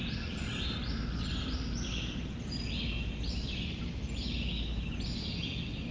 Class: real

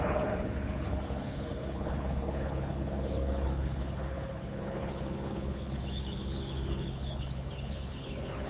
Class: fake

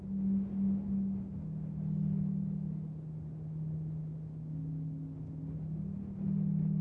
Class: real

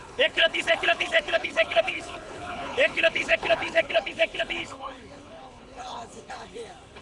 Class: fake